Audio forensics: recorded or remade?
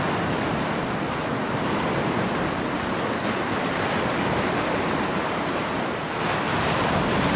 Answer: recorded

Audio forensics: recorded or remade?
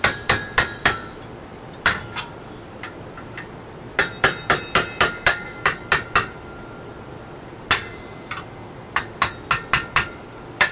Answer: recorded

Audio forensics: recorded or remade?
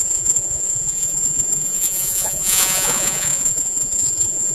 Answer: remade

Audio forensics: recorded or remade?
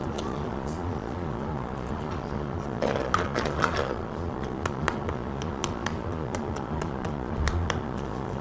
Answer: remade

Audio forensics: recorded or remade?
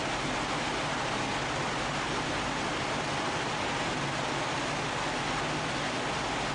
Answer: recorded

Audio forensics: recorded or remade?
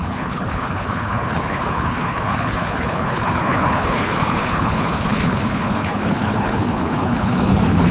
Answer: remade